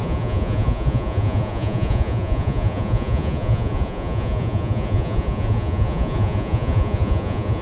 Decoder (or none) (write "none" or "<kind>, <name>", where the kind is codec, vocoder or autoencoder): vocoder, Vocos